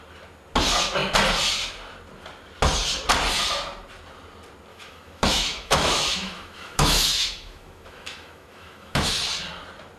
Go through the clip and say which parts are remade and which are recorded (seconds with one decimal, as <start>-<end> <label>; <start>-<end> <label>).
0.0-4.7 recorded; 4.7-9.1 remade; 9.1-10.0 recorded